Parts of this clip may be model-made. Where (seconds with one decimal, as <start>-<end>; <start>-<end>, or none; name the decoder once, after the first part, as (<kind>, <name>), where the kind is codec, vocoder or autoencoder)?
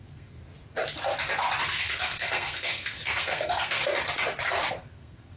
0.0-0.4 (codec, SNAC); 1.6-3.8; 4.7-5.4